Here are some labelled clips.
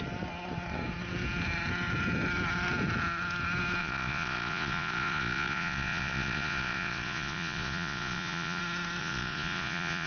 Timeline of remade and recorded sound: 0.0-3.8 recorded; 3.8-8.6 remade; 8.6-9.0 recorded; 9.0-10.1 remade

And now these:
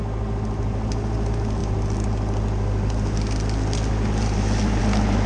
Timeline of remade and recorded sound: 0.0-5.3 recorded

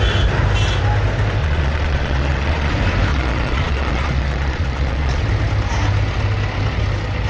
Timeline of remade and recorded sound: 0.0-1.4 recorded; 1.4-2.7 remade; 2.7-3.1 recorded; 3.1-5.2 remade; 5.2-7.3 recorded

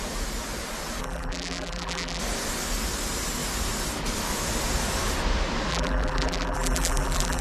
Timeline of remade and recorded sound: 0.0-1.0 recorded; 1.0-2.2 remade; 2.2-5.7 recorded; 5.7-7.4 remade